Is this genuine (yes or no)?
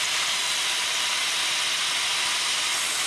yes